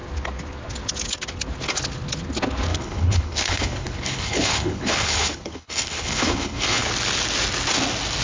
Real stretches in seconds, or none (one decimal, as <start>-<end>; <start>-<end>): 0.0-2.7; 6.9-8.2